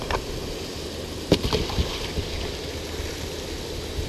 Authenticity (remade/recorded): recorded